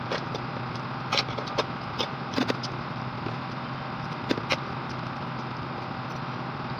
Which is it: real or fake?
real